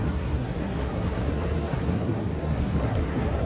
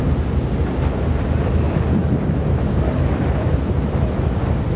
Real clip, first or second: second